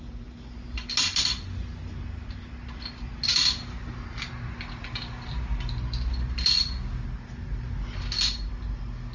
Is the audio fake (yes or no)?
no